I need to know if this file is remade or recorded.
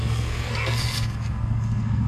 remade